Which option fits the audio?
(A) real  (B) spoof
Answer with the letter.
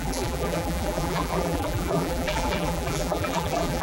B